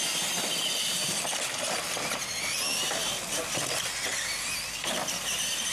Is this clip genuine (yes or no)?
yes